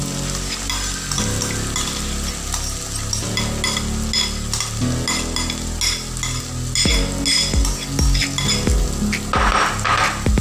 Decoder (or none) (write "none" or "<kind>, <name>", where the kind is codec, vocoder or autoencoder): none